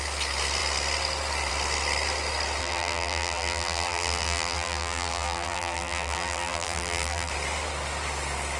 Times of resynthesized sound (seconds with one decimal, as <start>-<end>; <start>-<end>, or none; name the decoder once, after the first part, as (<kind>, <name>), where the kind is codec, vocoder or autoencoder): 2.6-7.3 (vocoder, BigVGAN v2)